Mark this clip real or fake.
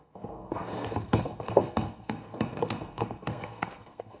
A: fake